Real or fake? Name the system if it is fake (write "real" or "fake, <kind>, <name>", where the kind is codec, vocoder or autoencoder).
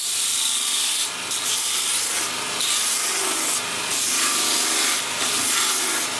real